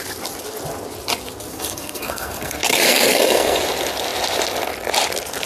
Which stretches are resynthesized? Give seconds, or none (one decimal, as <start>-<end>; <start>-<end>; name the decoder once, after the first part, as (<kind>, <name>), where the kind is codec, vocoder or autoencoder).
1.5-3.6 (codec, SNAC)